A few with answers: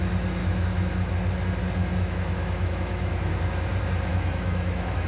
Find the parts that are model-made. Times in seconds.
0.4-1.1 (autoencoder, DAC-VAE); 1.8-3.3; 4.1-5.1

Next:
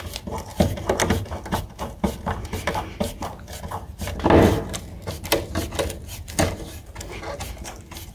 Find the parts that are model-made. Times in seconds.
none

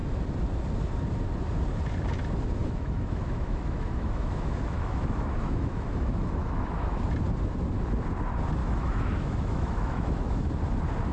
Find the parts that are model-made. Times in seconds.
2.6-7.0 (autoencoder, DAC-VAE); 8.6-10.5

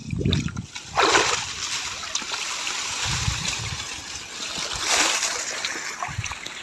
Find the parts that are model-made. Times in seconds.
none

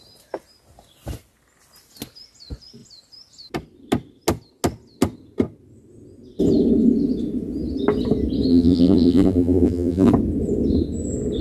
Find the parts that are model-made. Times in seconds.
8.5-10.1 (vocoder, BigVGAN v2)

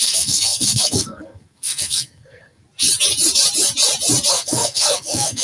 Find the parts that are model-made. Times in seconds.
0.0-2.6 (codec, SNAC); 4.3-5.4